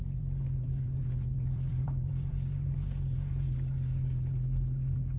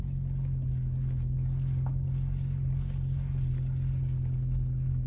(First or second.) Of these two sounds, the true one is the second